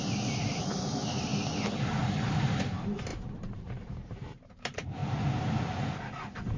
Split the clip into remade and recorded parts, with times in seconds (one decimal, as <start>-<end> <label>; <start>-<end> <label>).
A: 0.0-1.3 remade; 1.3-2.2 recorded; 2.2-5.0 remade; 5.0-6.0 recorded; 6.0-6.6 remade